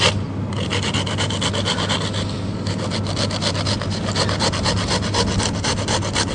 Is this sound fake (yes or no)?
no